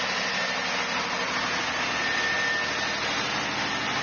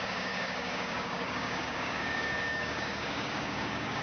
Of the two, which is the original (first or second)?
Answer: first